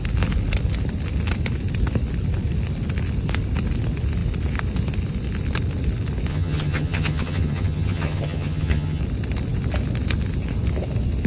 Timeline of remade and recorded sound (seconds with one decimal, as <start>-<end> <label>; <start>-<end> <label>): 0.0-6.3 recorded; 6.3-9.0 remade; 9.0-11.3 recorded